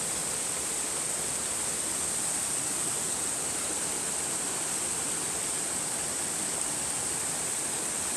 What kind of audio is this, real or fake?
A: real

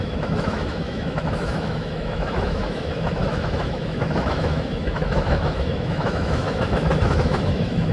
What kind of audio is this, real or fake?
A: fake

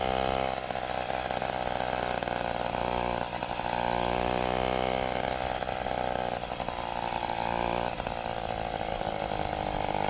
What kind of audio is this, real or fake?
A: real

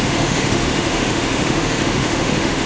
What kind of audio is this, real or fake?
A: fake